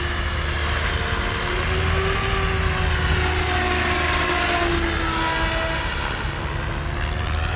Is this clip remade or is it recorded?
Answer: recorded